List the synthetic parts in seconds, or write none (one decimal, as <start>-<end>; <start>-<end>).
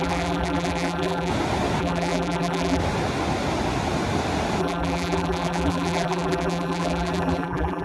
0.0-1.3; 1.8-2.8; 4.6-7.8